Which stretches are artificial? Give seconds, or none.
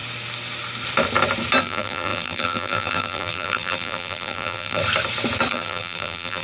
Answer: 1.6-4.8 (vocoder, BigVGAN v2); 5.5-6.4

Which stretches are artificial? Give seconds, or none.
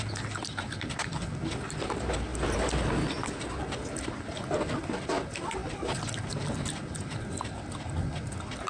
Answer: 0.0-2.3 (vocoder, BigVGAN v2); 4.0-5.6; 7.4-8.7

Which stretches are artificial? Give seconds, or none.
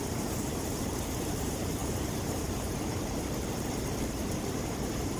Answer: 0.0-5.2 (vocoder, BigVGAN v2)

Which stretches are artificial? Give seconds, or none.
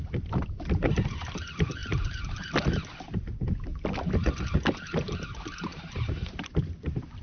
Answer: 0.0-1.8 (vocoder, BigVGAN v2); 2.4-3.7; 5.3-5.7; 6.2-7.2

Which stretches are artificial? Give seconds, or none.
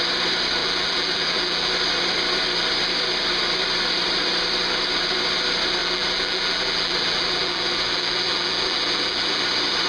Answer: 0.6-1.7 (vocoder, BigVGAN v2); 5.8-9.4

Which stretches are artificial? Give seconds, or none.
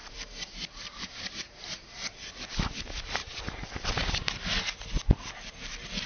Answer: 0.0-2.3 (vocoder, BigVGAN v2); 3.2-4.3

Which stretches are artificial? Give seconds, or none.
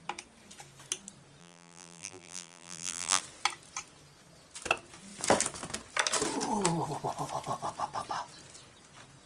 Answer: 1.4-3.2 (vocoder, BigVGAN v2)